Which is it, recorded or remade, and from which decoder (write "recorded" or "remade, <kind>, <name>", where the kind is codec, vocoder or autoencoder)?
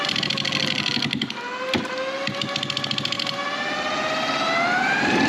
recorded